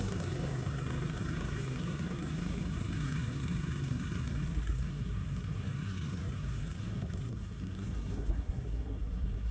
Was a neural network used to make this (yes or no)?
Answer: yes